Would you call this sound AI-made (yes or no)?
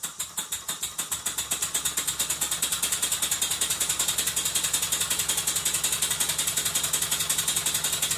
no